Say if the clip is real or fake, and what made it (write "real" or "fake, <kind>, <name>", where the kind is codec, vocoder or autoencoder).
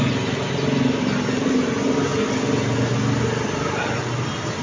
real